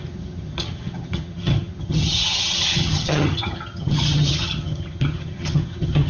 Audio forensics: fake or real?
fake